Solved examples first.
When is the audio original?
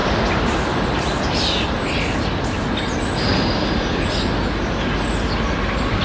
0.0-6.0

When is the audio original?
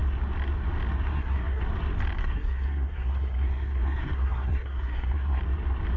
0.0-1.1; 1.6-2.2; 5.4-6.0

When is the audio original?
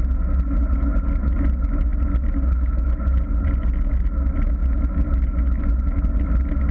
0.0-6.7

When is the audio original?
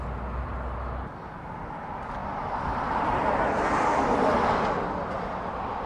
0.0-5.9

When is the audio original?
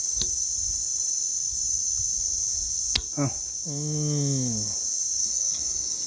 0.0-5.2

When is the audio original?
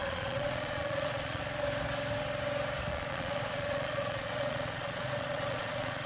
1.4-2.9